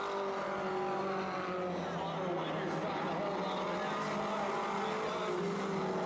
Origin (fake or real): real